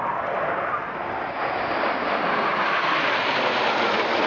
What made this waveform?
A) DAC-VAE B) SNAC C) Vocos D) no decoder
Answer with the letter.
D